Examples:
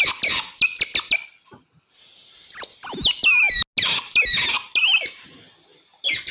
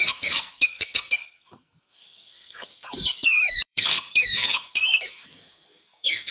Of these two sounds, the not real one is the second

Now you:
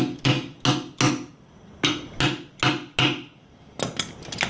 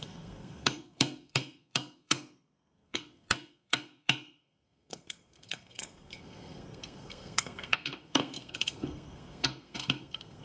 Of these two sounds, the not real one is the second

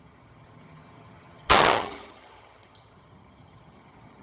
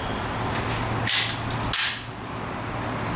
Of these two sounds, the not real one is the first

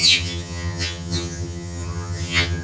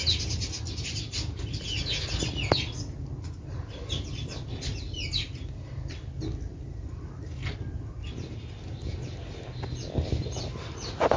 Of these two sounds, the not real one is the first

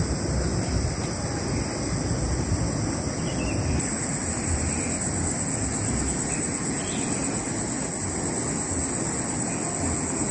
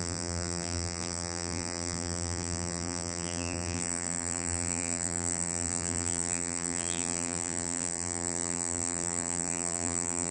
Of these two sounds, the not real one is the second